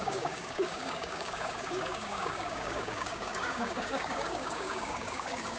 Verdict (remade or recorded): remade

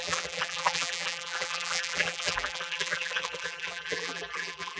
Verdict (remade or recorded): remade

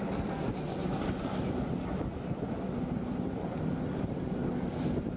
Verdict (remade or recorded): recorded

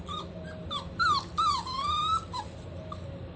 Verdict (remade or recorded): recorded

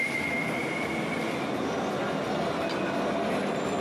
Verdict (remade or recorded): recorded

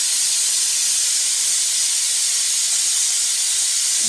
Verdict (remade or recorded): recorded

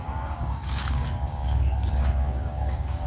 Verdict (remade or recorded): remade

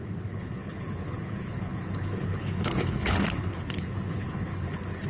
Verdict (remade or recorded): remade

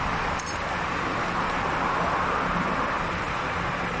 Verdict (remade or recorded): recorded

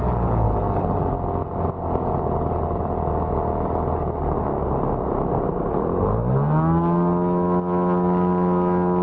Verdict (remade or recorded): recorded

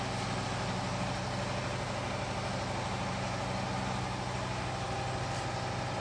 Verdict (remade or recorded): recorded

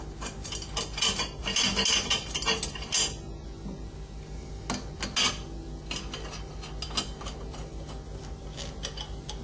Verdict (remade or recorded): recorded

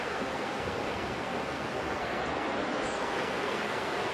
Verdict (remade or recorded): remade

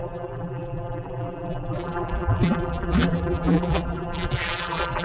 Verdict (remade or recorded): remade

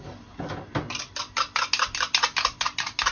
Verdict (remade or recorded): recorded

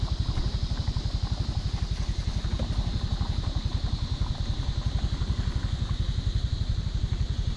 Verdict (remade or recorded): recorded